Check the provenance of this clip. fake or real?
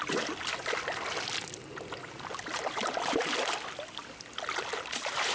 real